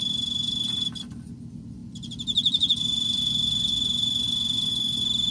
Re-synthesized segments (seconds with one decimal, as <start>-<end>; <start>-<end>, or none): none